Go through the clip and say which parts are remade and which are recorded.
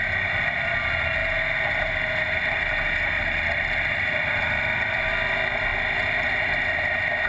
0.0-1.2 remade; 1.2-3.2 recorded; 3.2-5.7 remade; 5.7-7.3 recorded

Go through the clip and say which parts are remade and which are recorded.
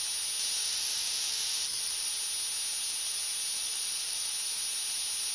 0.0-0.6 recorded; 0.6-2.1 remade; 2.1-3.6 recorded; 3.6-4.3 remade; 4.3-5.3 recorded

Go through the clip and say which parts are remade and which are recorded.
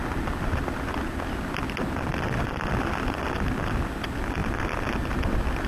0.0-5.7 recorded